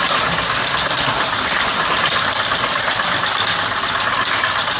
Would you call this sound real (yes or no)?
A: yes